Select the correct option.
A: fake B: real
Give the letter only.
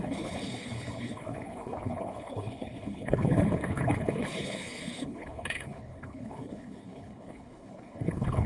A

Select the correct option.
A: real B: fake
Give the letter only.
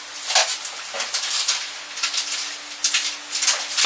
A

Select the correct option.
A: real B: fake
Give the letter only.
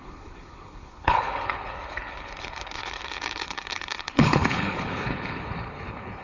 B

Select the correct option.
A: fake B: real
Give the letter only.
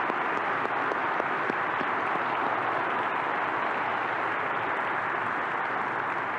B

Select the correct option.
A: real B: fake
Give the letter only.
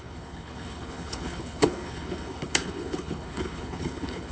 B